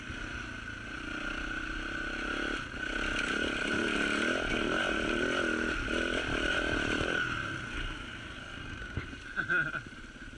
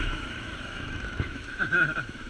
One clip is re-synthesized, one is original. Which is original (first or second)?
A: first